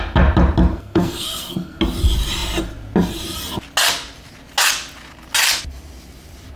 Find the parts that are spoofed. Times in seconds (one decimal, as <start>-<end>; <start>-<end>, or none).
0.7-1.8